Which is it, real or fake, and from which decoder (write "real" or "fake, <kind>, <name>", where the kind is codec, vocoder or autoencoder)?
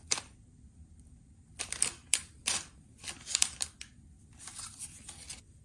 real